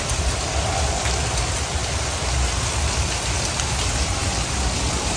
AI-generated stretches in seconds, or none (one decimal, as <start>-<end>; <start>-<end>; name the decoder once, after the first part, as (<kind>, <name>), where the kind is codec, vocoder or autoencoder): none